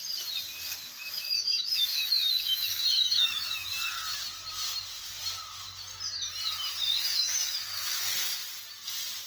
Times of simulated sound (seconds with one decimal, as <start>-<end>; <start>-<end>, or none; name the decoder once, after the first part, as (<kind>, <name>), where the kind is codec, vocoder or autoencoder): 0.7-3.7 (autoencoder, DAC-VAE); 7.0-8.3